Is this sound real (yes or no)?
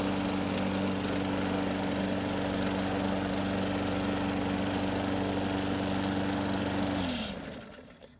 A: yes